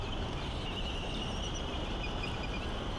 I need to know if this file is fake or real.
fake